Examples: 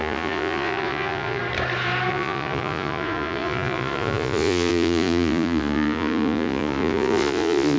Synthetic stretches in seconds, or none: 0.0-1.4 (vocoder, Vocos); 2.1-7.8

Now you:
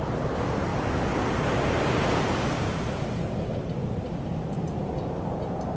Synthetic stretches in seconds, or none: 0.0-0.7 (vocoder, BigVGAN v2); 1.7-5.8

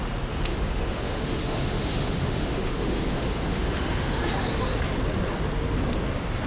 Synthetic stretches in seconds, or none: 0.5-4.2 (autoencoder, DAC-VAE)

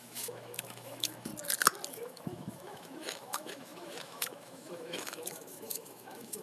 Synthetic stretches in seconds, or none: 0.0-1.3 (autoencoder, DAC-VAE); 1.9-6.4

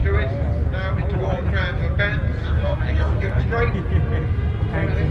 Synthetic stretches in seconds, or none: 2.4-3.4 (codec, SNAC)